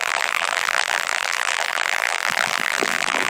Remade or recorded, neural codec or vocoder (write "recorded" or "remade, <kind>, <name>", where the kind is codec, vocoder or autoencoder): remade, vocoder, BigVGAN v2